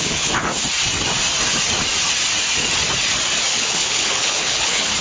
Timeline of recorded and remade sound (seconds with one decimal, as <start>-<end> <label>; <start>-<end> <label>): 0.0-0.5 remade; 0.5-3.5 recorded; 3.5-5.0 remade